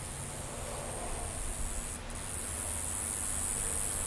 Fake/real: real